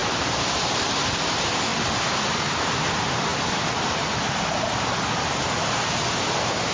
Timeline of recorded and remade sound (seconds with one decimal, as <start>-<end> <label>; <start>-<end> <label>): 0.0-1.7 remade; 1.7-2.3 recorded; 2.3-6.7 remade